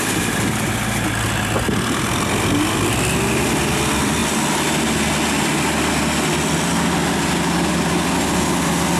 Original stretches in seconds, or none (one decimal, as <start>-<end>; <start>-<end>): 0.0-9.0